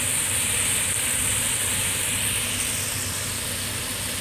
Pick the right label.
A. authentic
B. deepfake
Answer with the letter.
A